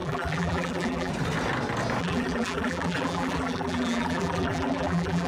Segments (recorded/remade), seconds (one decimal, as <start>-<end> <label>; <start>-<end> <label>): 0.0-1.1 remade; 1.1-2.0 recorded; 2.0-5.3 remade